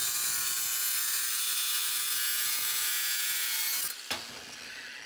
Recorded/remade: recorded